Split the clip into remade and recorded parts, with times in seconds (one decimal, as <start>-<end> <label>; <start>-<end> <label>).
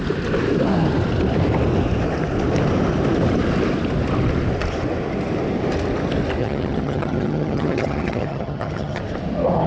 0.0-6.4 recorded; 6.4-9.0 remade; 9.0-9.7 recorded